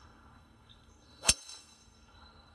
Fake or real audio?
fake